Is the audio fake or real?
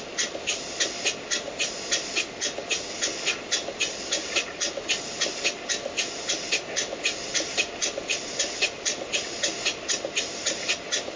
real